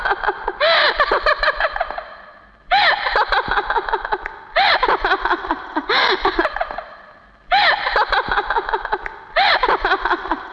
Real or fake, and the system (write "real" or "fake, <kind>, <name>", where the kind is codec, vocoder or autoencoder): real